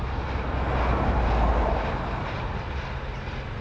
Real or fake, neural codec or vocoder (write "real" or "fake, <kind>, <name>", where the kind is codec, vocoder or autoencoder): real